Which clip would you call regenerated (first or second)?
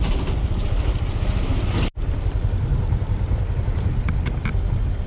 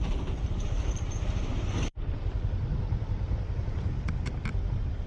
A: second